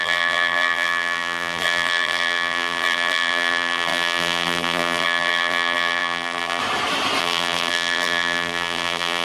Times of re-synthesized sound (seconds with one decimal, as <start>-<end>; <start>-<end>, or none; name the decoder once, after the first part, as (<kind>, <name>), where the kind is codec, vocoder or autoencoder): 0.0-6.6 (vocoder, BigVGAN v2); 7.2-9.2